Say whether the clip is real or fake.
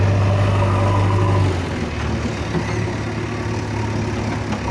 real